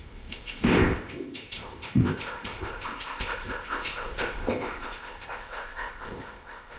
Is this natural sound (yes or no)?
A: no